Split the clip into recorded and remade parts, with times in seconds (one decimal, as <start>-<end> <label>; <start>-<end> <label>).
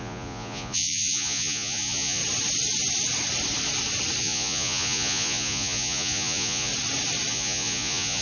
0.0-2.2 remade; 2.2-4.2 recorded; 4.2-6.7 remade; 6.7-7.3 recorded; 7.3-8.2 remade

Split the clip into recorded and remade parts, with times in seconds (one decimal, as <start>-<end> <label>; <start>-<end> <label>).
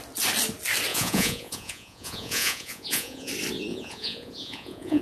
0.0-0.9 recorded; 0.9-3.3 remade; 3.3-3.7 recorded; 3.7-5.0 remade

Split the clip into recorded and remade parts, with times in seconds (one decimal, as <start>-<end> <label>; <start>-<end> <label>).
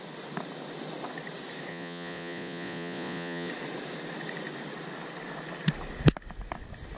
0.0-1.7 recorded; 1.7-3.5 remade; 3.5-7.0 recorded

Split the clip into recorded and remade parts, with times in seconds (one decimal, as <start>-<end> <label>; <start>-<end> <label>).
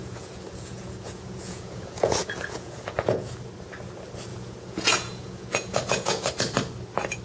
0.0-3.3 remade; 3.3-4.3 recorded; 4.3-6.3 remade; 6.3-7.2 recorded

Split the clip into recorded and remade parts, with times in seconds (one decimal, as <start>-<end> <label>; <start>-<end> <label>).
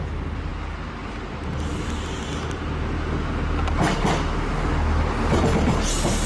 0.0-6.3 recorded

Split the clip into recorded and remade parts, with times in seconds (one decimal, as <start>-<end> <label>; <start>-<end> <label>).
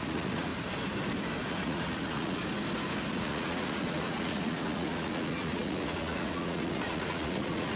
0.0-0.5 remade; 0.5-1.5 recorded; 1.5-2.4 remade; 2.4-3.1 recorded; 3.1-7.8 remade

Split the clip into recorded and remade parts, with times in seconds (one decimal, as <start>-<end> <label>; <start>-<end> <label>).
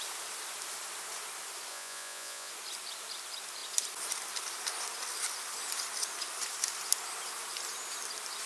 0.0-1.7 recorded; 1.7-2.5 remade; 2.5-8.5 recorded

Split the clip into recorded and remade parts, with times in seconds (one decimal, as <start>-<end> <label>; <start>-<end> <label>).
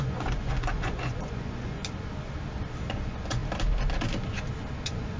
0.0-1.8 remade; 1.8-2.8 recorded; 2.8-3.4 remade; 3.4-4.8 recorded; 4.8-5.2 remade